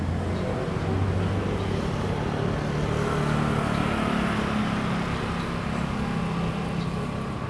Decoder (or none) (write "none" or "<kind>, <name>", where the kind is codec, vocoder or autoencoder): none